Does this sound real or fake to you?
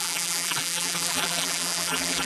fake